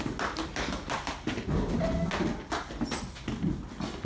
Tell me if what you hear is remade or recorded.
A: recorded